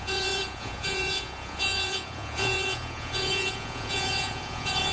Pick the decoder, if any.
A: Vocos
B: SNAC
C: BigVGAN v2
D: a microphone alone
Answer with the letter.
A